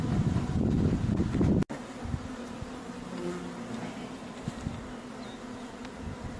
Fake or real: real